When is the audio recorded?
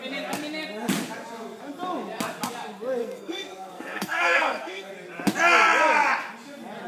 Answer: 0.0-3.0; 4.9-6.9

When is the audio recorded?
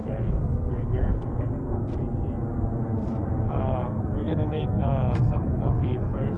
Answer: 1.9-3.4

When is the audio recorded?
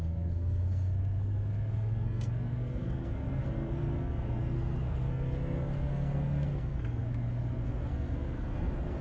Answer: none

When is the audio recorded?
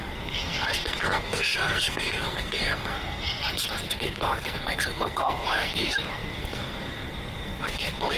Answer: none